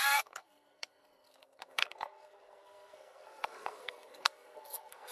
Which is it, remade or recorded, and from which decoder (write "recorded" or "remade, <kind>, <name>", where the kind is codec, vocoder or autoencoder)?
remade, codec, SNAC